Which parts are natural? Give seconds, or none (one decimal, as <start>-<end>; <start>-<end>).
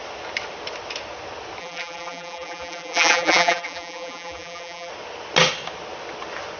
0.0-1.6; 4.9-6.6